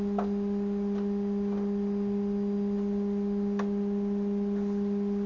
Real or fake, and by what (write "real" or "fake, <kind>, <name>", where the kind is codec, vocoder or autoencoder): real